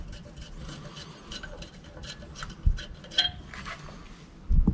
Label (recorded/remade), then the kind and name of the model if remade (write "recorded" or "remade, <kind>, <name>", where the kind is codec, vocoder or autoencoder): recorded